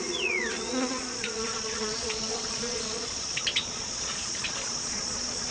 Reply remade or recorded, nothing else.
remade